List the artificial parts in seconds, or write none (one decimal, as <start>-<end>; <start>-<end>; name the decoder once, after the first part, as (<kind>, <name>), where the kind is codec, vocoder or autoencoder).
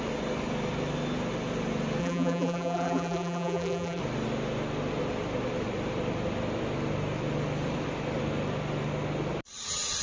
2.0-4.0 (vocoder, BigVGAN v2)